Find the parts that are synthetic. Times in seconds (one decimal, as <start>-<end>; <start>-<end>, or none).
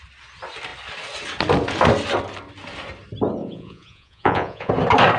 3.4-4.7